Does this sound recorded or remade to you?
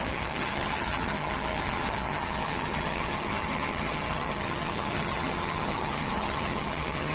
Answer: remade